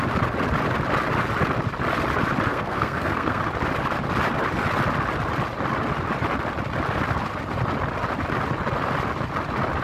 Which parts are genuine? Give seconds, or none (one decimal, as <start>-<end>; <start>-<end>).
0.0-2.5; 3.4-9.8